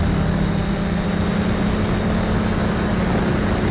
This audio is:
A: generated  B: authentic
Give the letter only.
B